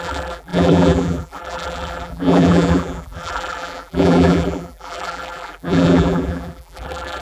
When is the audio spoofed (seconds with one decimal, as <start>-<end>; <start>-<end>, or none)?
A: 0.0-7.2